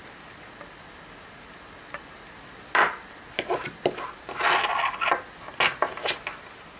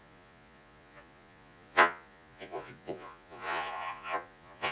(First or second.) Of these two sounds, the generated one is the second